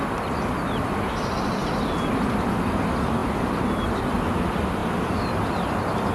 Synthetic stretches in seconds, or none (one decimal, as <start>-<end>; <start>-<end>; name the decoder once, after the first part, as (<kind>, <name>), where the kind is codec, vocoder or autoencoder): 3.2-4.0 (vocoder, BigVGAN v2); 4.8-6.1